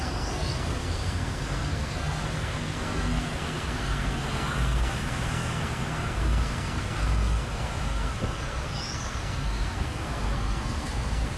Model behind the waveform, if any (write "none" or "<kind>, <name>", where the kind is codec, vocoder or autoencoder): codec, SNAC